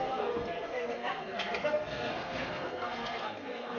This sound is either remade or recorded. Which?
remade